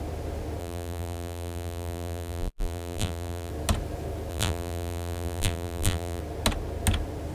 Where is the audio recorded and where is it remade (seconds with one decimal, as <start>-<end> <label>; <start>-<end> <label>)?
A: 0.0-0.6 recorded; 0.6-3.5 remade; 3.5-4.3 recorded; 4.3-6.2 remade; 6.2-7.3 recorded